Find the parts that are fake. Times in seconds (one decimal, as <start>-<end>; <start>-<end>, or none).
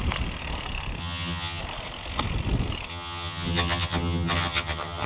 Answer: 1.0-1.6; 2.9-5.1